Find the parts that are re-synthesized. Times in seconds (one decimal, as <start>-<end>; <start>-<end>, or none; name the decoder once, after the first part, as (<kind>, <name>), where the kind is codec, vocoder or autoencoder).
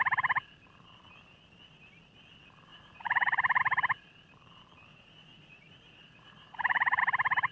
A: 2.7-3.6 (vocoder, Vocos); 4.9-7.0